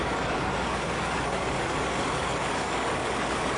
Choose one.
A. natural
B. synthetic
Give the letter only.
B